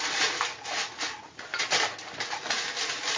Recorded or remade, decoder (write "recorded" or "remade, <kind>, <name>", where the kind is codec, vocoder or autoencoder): recorded